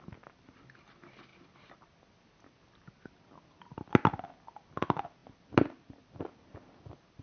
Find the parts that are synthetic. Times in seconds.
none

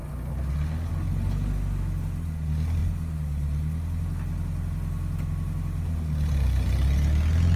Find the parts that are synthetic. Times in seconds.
none